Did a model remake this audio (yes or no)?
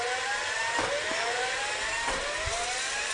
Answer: no